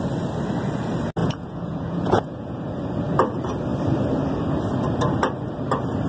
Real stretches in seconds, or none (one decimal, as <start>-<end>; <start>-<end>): 0.0-1.2; 2.6-6.1